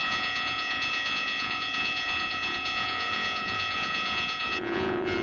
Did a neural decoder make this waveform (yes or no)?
yes